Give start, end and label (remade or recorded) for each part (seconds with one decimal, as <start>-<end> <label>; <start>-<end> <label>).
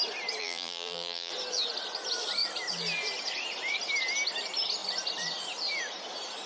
0.0-0.4 recorded; 0.4-1.3 remade; 1.3-6.5 recorded